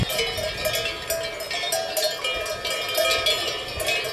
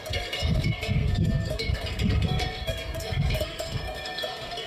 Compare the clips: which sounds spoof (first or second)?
second